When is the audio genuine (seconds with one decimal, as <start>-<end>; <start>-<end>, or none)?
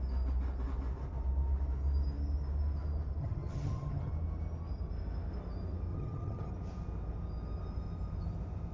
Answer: 0.0-3.2; 4.1-5.9; 6.5-8.7